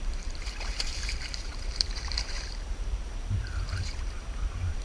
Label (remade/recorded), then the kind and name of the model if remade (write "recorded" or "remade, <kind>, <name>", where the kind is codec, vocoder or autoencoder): remade, vocoder, BigVGAN v2